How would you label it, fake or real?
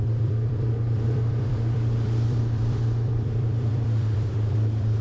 fake